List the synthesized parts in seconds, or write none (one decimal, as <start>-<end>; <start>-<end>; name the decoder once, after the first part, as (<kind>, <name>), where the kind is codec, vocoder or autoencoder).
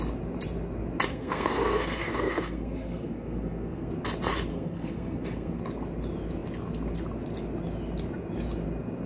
1.1-3.9 (codec, SNAC); 4.5-5.6